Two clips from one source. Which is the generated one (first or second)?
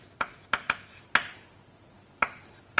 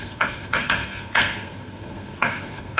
second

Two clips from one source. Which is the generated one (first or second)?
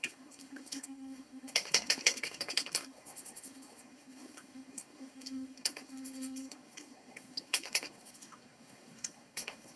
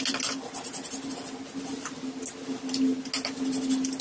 first